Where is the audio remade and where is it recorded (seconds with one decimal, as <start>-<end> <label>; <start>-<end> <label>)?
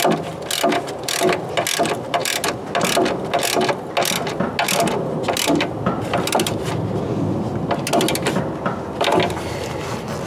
0.0-10.3 recorded